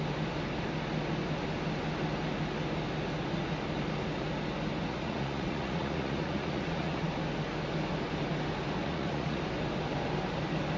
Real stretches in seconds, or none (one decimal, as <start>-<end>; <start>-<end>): 0.0-4.9; 7.2-8.8; 9.4-10.8